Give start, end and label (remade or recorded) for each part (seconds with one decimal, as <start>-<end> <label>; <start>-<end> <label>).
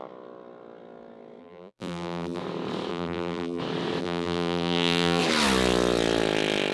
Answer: 0.0-1.4 recorded; 1.4-2.4 remade; 2.4-2.9 recorded; 2.9-3.6 remade; 3.6-4.0 recorded; 4.0-5.2 remade; 5.2-6.7 recorded